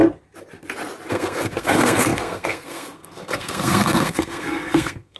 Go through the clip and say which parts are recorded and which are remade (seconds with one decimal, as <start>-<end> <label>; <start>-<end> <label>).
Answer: 0.0-1.1 recorded; 1.1-5.2 remade